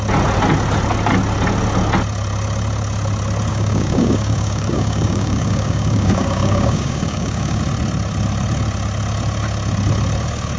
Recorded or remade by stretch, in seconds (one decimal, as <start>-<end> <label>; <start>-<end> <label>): 0.0-3.5 recorded; 3.5-7.6 remade; 7.6-10.6 recorded